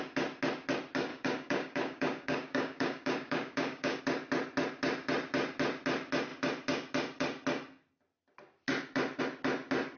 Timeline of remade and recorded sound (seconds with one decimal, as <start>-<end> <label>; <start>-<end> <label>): 0.0-1.1 recorded; 1.1-4.0 remade; 4.0-10.0 recorded